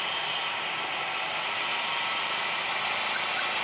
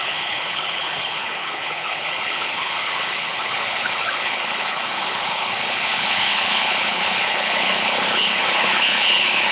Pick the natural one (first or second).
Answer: first